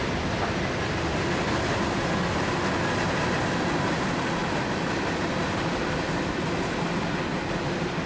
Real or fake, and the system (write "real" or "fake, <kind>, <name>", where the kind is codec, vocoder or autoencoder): real